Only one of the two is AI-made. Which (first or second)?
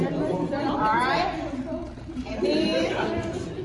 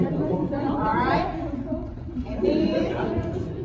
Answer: second